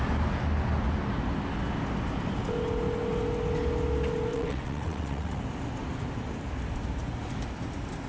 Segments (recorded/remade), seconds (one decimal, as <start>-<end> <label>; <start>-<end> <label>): 0.0-4.3 recorded; 4.3-5.4 remade; 5.4-8.1 recorded